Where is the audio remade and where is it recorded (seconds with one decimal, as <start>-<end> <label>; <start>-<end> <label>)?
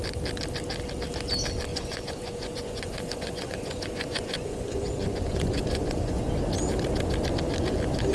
0.0-1.7 recorded; 1.7-6.3 remade; 6.3-8.1 recorded